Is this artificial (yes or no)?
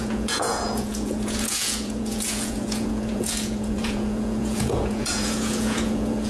yes